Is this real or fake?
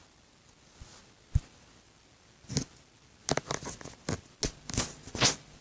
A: real